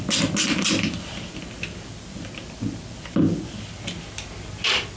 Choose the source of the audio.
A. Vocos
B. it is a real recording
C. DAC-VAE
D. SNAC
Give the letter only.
B